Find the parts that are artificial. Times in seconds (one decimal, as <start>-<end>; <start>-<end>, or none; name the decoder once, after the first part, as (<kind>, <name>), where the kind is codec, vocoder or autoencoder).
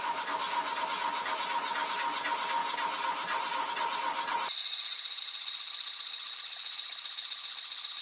none